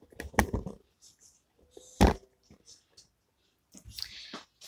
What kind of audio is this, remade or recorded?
recorded